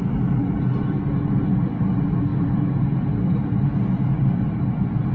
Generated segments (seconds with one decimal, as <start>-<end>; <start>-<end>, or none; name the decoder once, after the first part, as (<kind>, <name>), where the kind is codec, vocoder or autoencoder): none